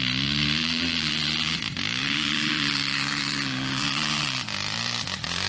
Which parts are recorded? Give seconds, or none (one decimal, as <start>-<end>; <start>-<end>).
0.0-0.6; 1.6-2.0